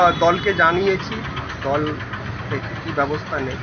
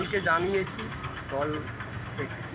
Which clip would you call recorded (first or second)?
first